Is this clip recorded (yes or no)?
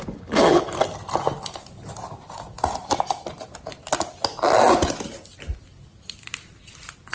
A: yes